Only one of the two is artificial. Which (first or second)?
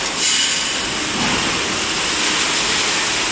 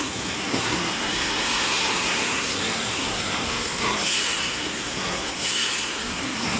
second